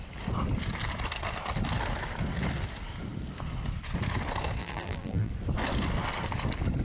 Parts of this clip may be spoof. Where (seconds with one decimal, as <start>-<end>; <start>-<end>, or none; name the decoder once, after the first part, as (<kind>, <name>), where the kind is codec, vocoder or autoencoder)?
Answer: 4.6-5.3 (vocoder, BigVGAN v2)